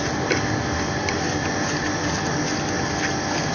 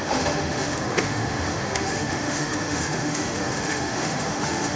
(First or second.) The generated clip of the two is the second